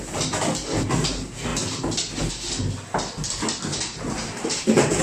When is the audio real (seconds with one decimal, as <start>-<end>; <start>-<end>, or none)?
0.0-3.7